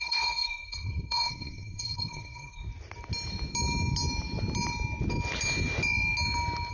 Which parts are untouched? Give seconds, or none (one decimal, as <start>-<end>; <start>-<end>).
2.7-6.7